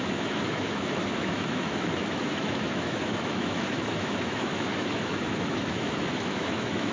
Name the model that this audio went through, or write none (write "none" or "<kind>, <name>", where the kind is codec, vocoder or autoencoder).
autoencoder, DAC-VAE